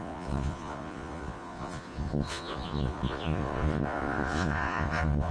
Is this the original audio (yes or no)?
no